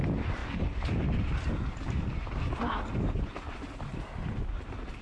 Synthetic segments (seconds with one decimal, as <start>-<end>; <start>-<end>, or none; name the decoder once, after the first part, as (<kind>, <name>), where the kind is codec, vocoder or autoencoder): none